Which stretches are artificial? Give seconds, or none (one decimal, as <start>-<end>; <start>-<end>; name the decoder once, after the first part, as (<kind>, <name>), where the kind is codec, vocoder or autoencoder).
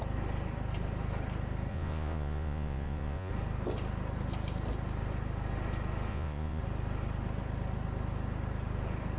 1.7-3.3 (vocoder, Vocos); 6.1-6.6